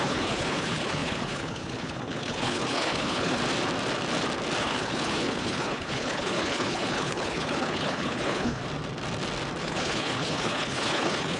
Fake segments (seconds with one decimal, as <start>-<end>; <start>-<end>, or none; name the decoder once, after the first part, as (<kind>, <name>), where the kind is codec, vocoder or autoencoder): 0.0-3.4 (codec, HILCodec); 4.6-8.6; 9.6-11.4